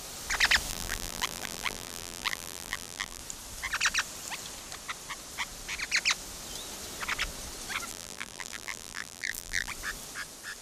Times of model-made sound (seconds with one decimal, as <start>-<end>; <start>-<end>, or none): 0.7-3.2; 7.9-9.7